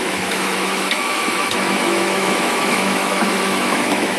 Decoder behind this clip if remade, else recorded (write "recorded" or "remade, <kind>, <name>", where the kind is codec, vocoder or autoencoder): remade, autoencoder, DAC-VAE